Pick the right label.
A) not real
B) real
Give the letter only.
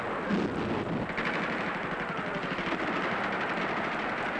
B